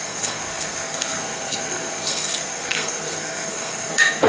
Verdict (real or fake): fake